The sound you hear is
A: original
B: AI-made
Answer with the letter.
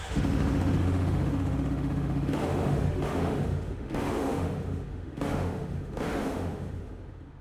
B